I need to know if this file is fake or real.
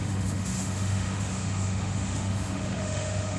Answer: fake